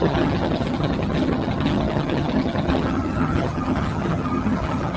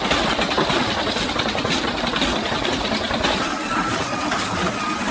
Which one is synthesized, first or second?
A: first